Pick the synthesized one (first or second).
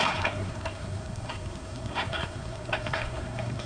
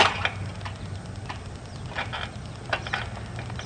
first